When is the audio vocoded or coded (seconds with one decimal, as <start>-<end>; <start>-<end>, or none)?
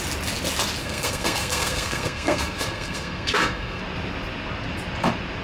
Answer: 0.8-3.8